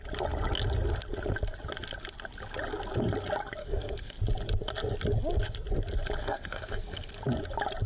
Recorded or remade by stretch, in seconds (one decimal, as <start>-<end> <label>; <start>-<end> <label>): 0.0-3.6 recorded; 3.6-4.2 remade; 4.2-6.2 recorded; 6.2-7.1 remade; 7.1-7.9 recorded